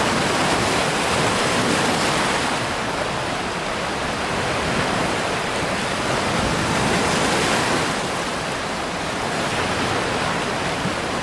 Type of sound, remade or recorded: recorded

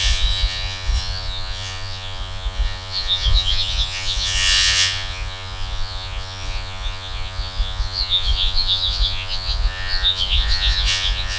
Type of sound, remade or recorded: remade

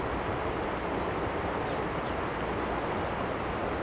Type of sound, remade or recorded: recorded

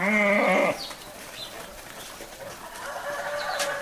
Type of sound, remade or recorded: recorded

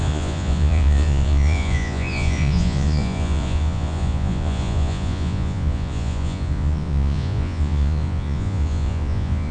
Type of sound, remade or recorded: remade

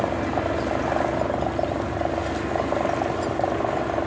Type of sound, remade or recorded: recorded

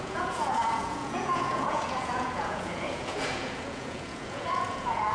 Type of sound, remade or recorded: remade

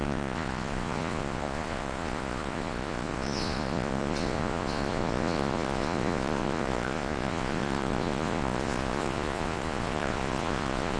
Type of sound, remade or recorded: remade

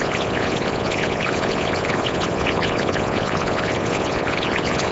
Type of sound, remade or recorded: remade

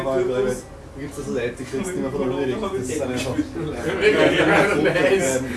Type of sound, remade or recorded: recorded